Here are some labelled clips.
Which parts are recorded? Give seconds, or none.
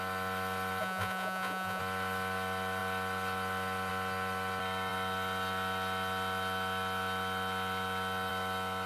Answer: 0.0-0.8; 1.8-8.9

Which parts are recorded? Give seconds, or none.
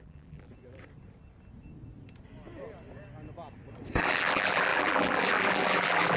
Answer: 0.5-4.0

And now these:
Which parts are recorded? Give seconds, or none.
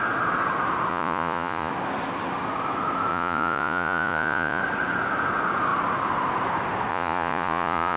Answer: 0.0-0.9; 1.7-3.1; 4.6-6.9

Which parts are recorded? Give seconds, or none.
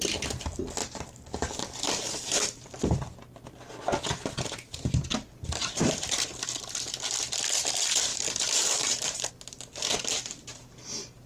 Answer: 0.0-0.8; 2.9-8.1; 9.3-11.3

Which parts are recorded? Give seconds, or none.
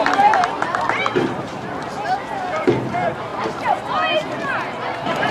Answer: 0.0-5.3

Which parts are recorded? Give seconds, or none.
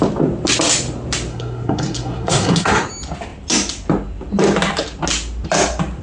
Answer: 0.0-1.3; 2.9-6.0